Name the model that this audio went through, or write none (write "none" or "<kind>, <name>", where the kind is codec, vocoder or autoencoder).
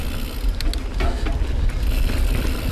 none